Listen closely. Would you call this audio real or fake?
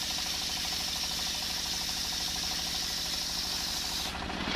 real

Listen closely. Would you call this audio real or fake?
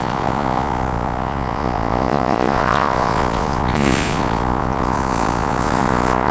fake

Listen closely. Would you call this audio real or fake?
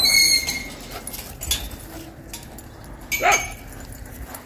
real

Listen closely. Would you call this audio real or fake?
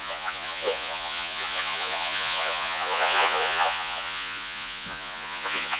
fake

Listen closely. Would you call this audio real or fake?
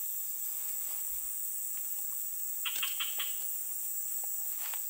fake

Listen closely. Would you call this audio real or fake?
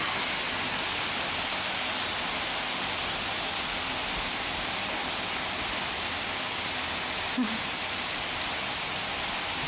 real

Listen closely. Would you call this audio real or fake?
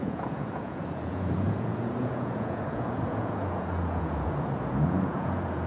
fake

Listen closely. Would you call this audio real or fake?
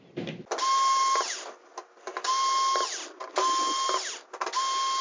real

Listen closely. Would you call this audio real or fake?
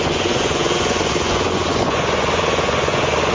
fake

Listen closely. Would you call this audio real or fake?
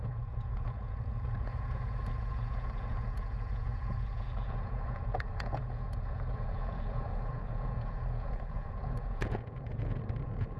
fake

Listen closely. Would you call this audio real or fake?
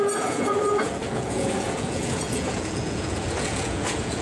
fake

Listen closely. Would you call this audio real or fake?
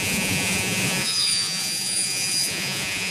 fake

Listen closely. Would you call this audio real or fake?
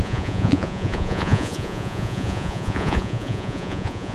fake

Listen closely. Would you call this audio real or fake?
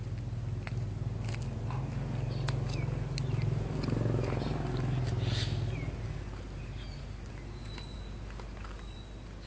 real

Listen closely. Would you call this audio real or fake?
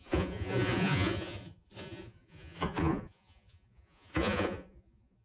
fake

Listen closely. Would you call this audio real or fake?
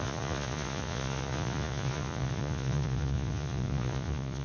fake